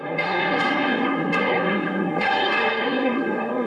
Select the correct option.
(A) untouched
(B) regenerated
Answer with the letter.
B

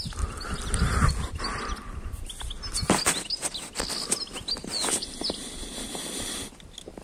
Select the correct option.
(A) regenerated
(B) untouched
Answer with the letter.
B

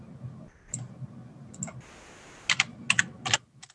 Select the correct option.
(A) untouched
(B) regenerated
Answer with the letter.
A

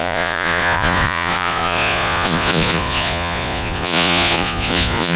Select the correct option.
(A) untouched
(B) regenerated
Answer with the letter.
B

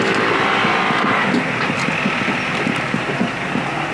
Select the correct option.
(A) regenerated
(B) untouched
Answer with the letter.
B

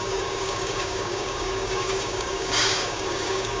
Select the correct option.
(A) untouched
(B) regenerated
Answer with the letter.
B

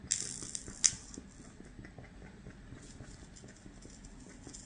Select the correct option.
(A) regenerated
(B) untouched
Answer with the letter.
B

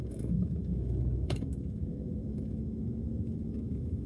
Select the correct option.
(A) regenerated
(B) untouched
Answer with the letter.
A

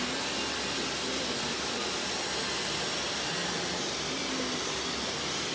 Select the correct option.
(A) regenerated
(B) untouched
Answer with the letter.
B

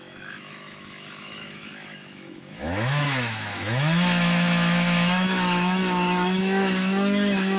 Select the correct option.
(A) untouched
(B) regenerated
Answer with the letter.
B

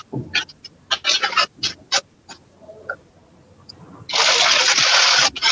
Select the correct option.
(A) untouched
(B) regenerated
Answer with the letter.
A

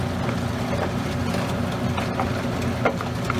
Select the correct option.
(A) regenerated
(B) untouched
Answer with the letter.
B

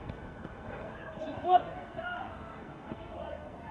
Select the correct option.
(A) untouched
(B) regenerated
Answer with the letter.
B